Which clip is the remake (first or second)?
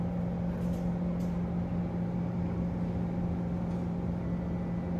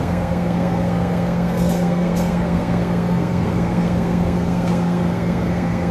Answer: second